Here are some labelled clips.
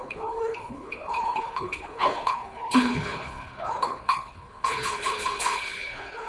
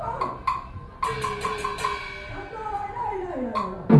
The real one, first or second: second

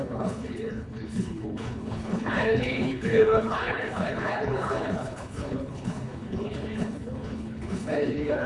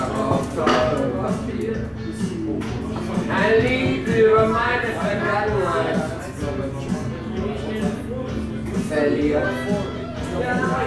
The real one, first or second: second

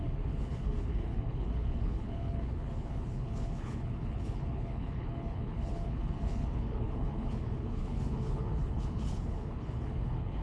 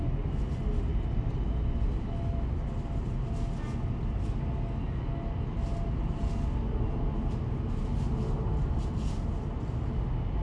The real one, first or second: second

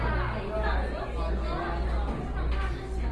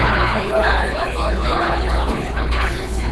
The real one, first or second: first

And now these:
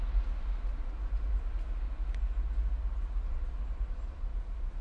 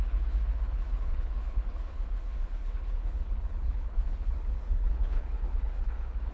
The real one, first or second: first